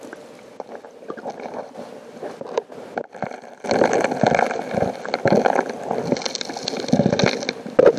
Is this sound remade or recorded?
recorded